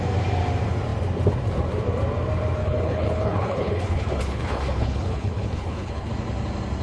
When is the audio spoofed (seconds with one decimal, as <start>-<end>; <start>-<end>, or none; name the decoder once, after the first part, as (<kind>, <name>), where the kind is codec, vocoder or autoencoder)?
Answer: 2.6-6.1 (codec, HILCodec)